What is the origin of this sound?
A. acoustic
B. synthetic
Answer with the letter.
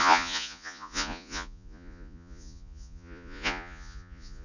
B